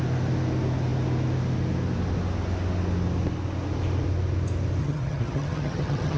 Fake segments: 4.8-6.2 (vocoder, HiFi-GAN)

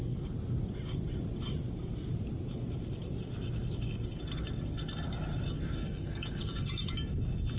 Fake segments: 5.7-7.1 (codec, DAC)

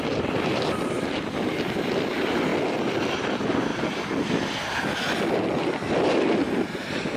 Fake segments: 0.0-2.5 (vocoder, BigVGAN v2); 3.1-3.7